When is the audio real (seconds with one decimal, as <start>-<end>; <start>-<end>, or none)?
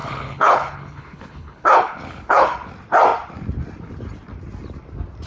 2.7-5.3